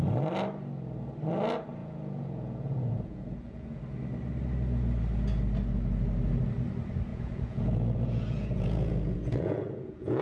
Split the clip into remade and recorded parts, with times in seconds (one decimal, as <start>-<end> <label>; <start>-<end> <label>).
0.0-1.8 recorded; 1.8-3.8 remade; 3.8-7.1 recorded; 7.1-10.2 remade